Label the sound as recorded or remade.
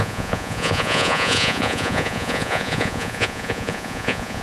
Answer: remade